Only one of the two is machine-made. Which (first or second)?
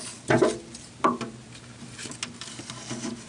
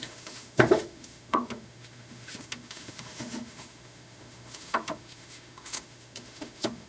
second